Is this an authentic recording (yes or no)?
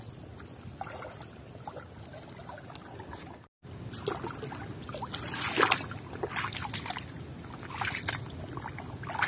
yes